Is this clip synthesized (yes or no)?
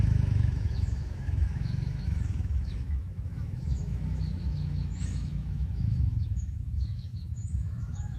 yes